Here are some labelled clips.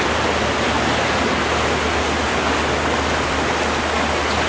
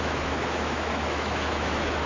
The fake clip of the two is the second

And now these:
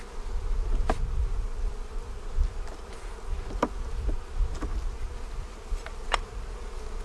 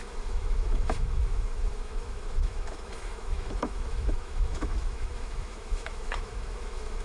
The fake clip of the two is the second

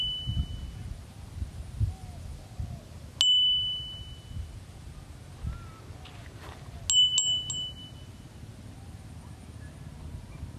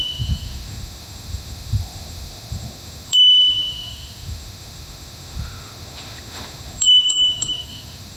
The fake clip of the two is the second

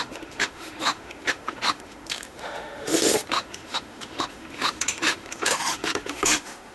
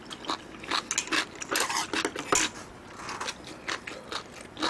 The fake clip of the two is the first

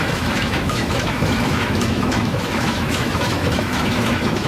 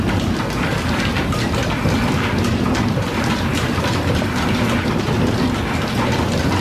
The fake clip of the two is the first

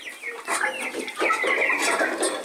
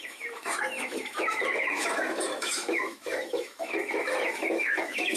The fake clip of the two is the second